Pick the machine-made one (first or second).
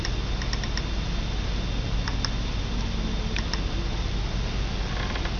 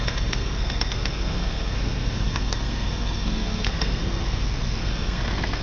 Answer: second